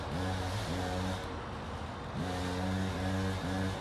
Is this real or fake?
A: real